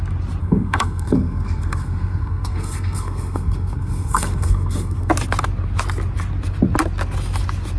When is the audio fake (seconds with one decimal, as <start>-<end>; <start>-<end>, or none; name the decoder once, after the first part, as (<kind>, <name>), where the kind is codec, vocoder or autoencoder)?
0.4-5.1 (codec, SNAC)